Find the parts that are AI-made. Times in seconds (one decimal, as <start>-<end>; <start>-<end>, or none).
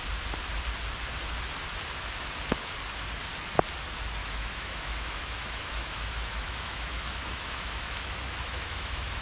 4.2-9.2